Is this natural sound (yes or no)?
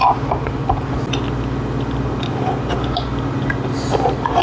yes